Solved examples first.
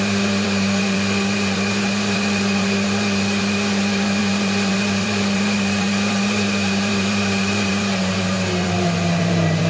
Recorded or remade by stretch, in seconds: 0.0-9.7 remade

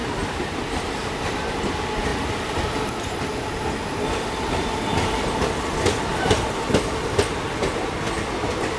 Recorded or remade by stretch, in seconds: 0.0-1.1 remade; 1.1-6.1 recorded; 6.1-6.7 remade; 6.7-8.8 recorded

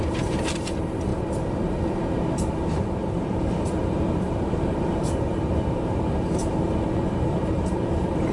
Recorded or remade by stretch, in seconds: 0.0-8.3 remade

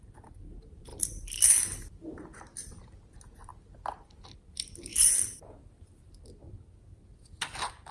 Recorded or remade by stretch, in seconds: 0.0-0.9 recorded; 0.9-2.8 remade; 2.8-4.9 recorded; 4.9-5.5 remade; 5.5-7.9 recorded

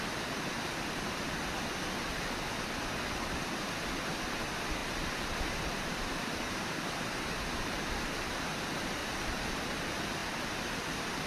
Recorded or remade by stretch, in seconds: 0.0-4.8 recorded; 4.8-8.6 remade; 8.6-9.0 recorded; 9.0-9.7 remade; 9.7-11.3 recorded

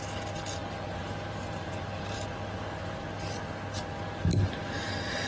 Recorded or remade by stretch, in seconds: 0.0-0.6 recorded; 0.6-3.0 remade; 3.0-5.3 recorded

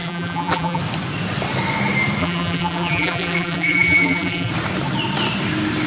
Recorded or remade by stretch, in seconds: 0.0-0.8 remade; 0.8-2.2 recorded; 2.2-4.5 remade; 4.5-5.9 recorded